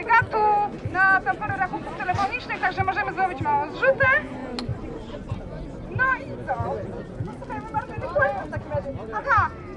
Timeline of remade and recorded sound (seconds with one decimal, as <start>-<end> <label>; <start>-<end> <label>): 0.0-4.7 recorded; 4.7-5.3 remade; 5.3-9.8 recorded